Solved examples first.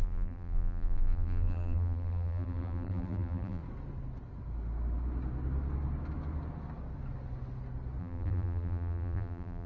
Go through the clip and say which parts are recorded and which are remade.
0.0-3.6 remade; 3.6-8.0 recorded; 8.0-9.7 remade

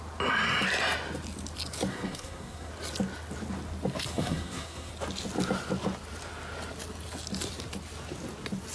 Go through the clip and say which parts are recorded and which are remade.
0.0-1.9 recorded; 1.9-2.7 remade; 2.7-4.1 recorded; 4.1-4.9 remade; 4.9-8.7 recorded